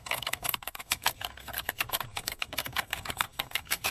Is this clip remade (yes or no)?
yes